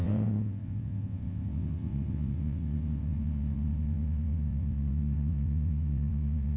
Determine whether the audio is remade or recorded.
remade